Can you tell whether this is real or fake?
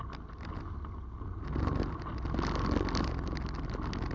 real